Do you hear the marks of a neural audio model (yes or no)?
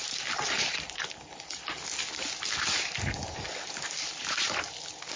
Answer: yes